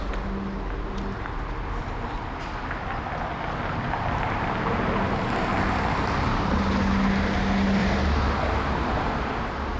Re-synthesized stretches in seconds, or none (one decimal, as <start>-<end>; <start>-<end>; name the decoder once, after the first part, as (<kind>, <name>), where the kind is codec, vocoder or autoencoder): 7.8-9.3 (vocoder, BigVGAN v2)